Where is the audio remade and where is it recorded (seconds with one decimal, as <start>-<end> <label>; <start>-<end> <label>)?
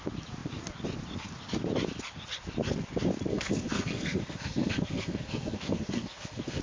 0.0-3.3 recorded; 3.3-6.6 remade